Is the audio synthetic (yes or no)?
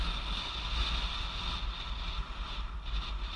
no